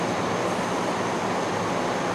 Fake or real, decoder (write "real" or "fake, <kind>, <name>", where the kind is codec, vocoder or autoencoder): real